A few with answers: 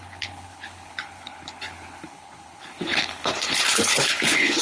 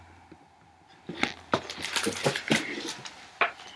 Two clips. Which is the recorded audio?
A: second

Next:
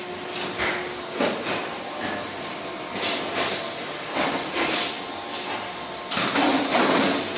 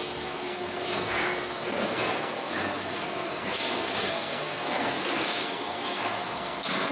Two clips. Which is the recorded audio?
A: first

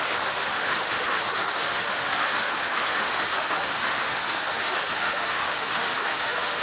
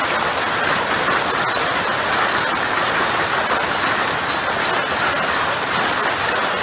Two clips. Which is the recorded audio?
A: second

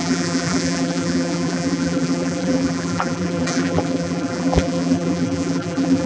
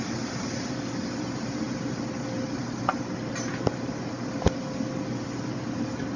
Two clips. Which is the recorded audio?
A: second